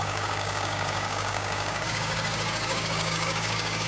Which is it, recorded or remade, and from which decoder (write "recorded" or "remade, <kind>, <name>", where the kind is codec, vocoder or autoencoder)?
remade, codec, DAC